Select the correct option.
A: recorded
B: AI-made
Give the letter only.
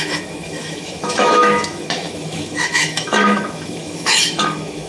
B